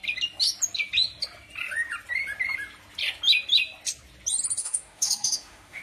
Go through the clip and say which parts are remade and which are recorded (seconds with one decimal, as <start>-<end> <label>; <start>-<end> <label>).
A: 0.0-4.6 recorded; 4.6-5.8 remade